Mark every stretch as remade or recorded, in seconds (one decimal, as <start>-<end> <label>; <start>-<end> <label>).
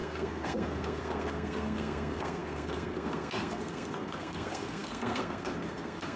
0.0-6.2 remade